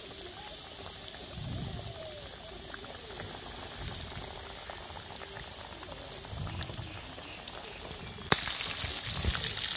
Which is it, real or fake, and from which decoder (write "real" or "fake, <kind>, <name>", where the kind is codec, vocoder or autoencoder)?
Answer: real